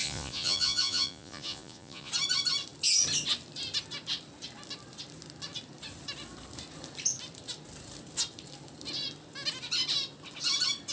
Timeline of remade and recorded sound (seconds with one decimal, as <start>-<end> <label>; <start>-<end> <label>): 0.0-2.1 remade; 2.1-10.9 recorded